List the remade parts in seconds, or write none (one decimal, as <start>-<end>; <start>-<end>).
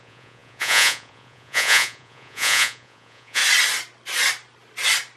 0.0-3.4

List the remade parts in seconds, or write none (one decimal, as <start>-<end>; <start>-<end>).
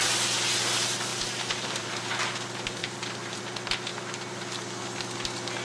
1.1-2.1; 2.8-3.4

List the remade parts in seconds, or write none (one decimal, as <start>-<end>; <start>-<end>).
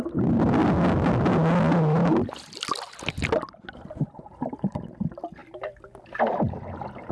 none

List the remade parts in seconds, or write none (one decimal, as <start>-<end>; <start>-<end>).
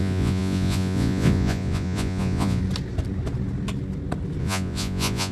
0.0-2.6; 4.4-5.3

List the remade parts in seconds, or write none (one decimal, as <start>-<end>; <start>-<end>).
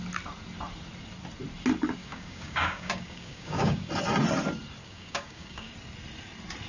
2.0-3.9; 4.8-5.7